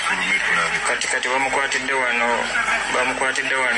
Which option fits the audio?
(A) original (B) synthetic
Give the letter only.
A